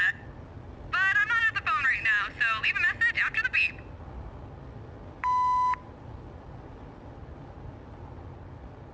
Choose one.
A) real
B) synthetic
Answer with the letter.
A